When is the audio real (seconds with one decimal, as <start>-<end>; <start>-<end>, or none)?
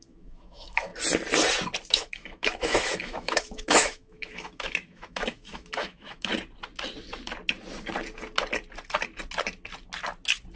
0.9-1.9; 6.3-10.6